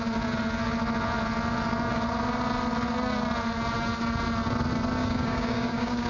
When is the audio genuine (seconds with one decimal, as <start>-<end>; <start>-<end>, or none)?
0.0-5.0